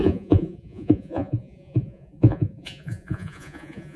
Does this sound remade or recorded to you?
remade